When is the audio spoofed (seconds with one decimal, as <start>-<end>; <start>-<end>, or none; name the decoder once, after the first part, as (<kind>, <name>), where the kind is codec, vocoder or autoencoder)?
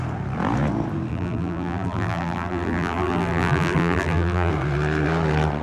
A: 1.1-4.5 (vocoder, BigVGAN v2)